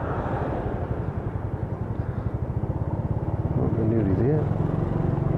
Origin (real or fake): real